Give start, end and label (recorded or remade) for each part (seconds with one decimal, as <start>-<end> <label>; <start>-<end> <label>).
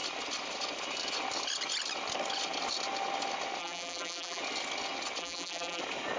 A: 0.0-3.6 recorded; 3.6-4.4 remade; 4.4-5.2 recorded; 5.2-5.8 remade; 5.8-6.2 recorded